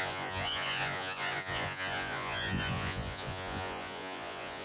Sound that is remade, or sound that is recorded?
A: remade